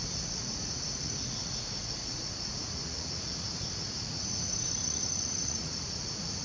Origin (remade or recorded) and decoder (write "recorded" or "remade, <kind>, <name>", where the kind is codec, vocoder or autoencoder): remade, vocoder, Vocos